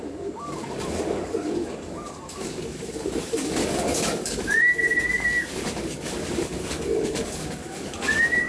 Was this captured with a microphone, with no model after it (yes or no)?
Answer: no